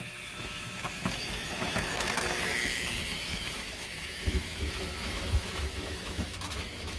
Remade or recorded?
remade